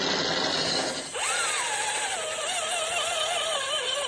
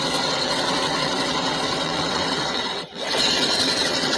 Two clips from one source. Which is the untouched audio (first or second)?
first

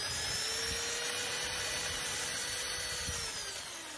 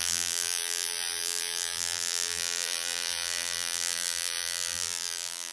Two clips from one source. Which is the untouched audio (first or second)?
first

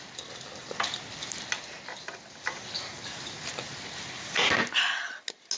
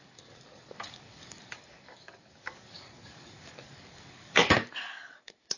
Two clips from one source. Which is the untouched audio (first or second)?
first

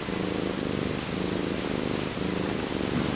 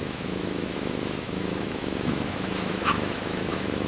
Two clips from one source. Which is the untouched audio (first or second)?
first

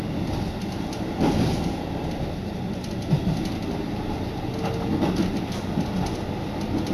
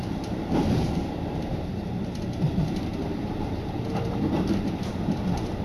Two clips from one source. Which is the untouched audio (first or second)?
first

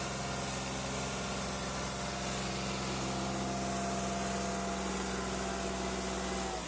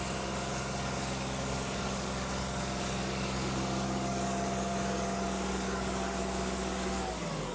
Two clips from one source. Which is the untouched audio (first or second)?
first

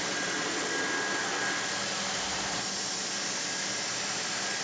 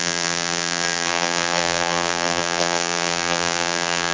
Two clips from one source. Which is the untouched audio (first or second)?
first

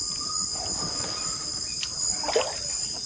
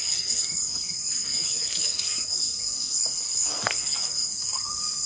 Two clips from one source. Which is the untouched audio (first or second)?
first